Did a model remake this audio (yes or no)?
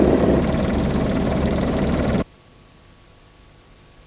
no